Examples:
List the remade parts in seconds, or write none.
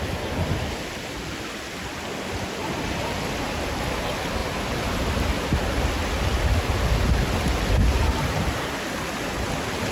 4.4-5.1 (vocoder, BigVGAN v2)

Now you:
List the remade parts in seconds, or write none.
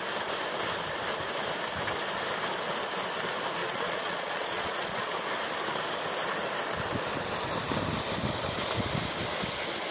3.6-5.2 (vocoder, Vocos)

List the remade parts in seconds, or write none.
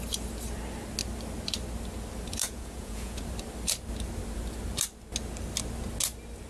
2.4-3.2 (vocoder, Vocos)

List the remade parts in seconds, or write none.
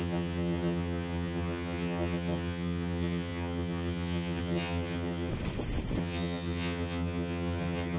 0.0-5.3 (vocoder, HiFi-GAN); 6.0-8.0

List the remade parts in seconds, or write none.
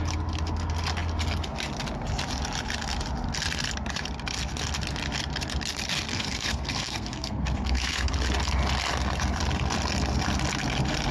6.1-8.1 (codec, SNAC)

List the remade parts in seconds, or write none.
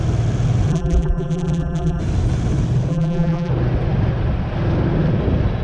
0.7-2.0 (vocoder, BigVGAN v2); 2.9-3.5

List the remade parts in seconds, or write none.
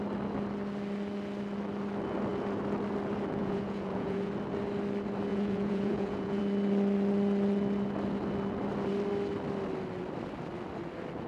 3.4-4.3 (vocoder, Vocos); 5.3-6.4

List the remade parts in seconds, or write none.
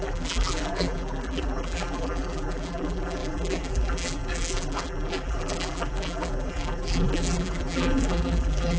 0.0-8.8 (vocoder, BigVGAN v2)